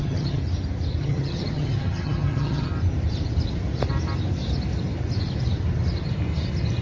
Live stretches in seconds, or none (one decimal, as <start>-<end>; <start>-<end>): 0.4-1.0; 2.7-6.8